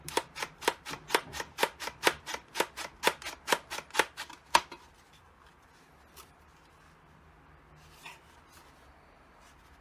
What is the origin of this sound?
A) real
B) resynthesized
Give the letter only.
A